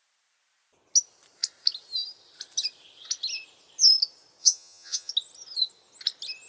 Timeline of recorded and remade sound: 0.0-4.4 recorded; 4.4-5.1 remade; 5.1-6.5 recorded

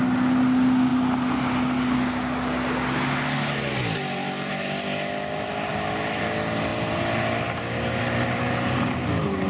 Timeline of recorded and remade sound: 0.0-9.5 recorded

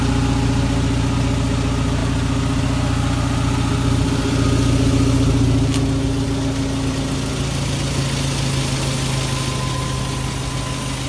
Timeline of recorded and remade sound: 0.0-11.1 recorded

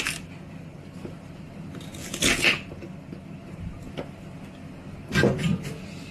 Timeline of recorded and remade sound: 0.0-6.1 recorded

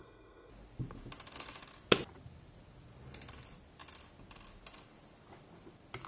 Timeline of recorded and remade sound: 0.0-0.5 remade; 0.5-6.1 recorded